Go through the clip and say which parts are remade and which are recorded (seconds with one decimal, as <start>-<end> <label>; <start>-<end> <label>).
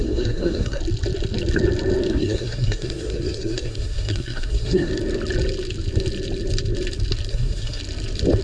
0.0-0.8 remade; 0.8-2.1 recorded; 2.1-4.9 remade; 4.9-7.3 recorded; 7.3-7.8 remade; 7.8-8.4 recorded